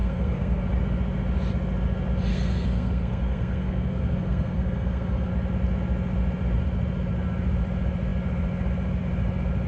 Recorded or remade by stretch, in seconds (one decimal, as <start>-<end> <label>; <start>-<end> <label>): 0.0-0.6 remade; 0.6-2.3 recorded; 2.3-5.3 remade; 5.3-9.7 recorded